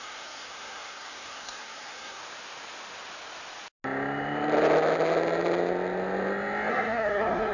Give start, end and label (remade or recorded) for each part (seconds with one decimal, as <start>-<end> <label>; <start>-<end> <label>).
0.0-2.2 remade; 2.2-6.7 recorded; 6.7-7.5 remade